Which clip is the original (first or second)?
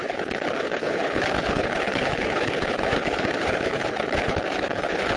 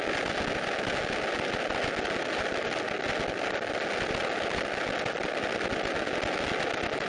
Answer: second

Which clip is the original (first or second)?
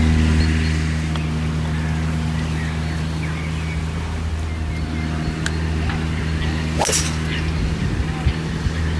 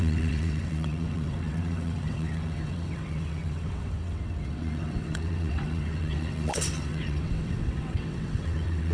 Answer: first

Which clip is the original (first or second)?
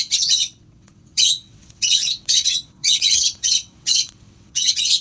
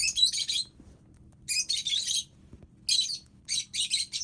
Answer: second